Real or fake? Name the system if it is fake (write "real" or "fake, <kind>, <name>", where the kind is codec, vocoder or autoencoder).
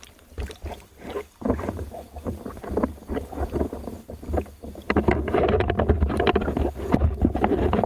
real